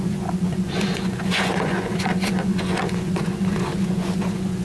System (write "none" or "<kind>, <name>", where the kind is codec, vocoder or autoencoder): vocoder, Vocos